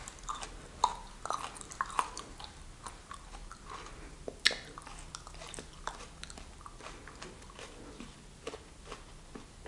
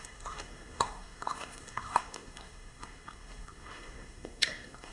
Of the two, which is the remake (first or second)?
second